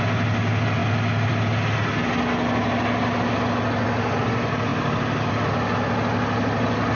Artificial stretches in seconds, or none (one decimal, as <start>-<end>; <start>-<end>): none